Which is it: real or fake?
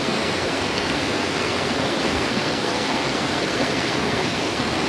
fake